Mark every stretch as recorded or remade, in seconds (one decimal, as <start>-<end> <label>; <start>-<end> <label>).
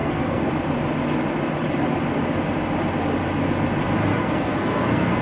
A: 0.0-0.5 remade; 0.5-4.1 recorded; 4.1-5.2 remade